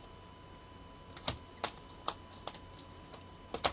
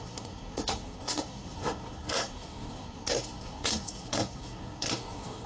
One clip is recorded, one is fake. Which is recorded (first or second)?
first